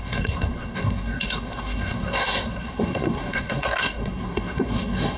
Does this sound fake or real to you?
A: fake